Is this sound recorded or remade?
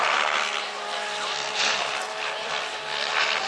recorded